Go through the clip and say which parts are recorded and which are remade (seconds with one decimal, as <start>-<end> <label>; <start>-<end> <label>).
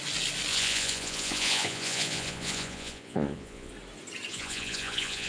0.0-0.5 recorded; 0.5-3.7 remade; 3.7-4.3 recorded; 4.3-5.3 remade